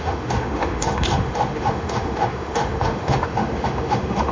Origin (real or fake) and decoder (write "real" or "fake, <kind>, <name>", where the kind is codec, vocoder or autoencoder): fake, autoencoder, DAC-VAE